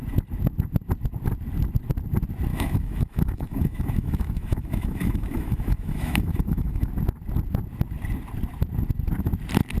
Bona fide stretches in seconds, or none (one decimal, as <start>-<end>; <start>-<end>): 0.0-2.5; 6.9-9.8